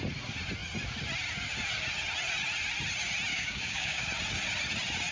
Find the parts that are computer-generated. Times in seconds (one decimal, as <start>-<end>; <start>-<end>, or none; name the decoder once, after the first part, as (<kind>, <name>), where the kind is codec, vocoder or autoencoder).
3.3-4.0 (codec, DAC)